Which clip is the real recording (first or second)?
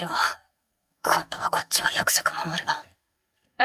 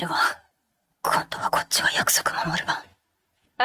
second